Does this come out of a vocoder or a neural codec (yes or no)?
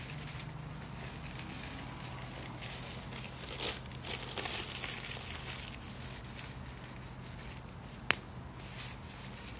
no